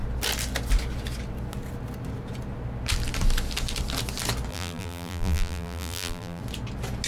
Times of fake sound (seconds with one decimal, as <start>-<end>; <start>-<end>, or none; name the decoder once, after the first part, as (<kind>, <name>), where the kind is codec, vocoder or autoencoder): 4.5-6.4 (vocoder, BigVGAN v2)

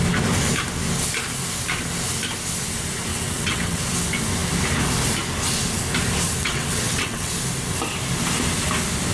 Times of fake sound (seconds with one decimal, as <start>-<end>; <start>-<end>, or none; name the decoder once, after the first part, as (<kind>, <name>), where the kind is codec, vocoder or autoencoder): 3.1-3.8 (vocoder, WaveNeXt); 6.4-7.3

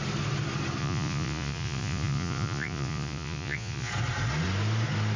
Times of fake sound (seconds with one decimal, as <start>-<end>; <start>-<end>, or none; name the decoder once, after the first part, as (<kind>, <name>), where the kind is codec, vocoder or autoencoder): 0.8-3.9 (vocoder, Vocos)

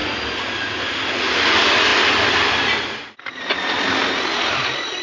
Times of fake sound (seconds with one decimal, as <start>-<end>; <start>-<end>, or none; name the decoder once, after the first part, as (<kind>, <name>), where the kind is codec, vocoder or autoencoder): none

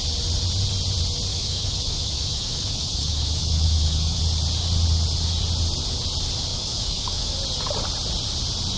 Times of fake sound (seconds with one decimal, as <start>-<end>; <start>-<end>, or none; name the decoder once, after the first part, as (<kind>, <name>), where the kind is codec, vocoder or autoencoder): 1.3-4.2 (autoencoder, DAC-VAE); 6.5-7.3

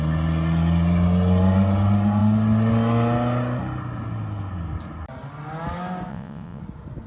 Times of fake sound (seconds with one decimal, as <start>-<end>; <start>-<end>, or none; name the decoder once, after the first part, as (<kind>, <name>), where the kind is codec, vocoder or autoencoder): 6.1-6.6 (vocoder, WaveNeXt)

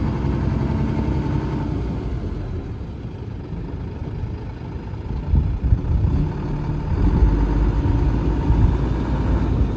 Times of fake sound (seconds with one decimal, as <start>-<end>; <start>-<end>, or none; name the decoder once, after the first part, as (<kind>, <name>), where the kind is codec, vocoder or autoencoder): none